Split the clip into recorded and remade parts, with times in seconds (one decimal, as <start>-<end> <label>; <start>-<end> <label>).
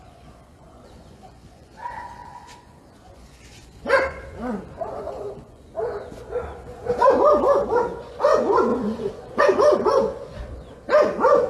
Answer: 0.0-11.5 remade